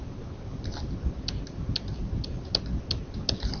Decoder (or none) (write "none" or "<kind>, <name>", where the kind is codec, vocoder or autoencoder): none